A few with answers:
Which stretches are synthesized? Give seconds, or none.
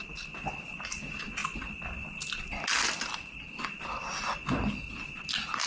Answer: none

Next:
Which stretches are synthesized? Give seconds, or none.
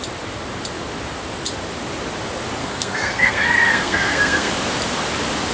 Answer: 2.6-4.5